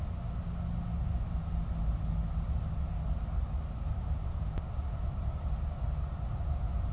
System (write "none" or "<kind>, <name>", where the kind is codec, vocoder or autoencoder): none